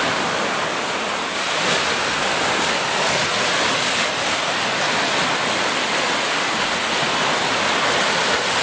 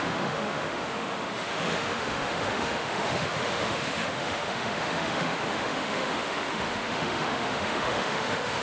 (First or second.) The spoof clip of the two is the second